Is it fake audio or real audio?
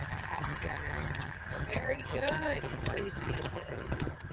fake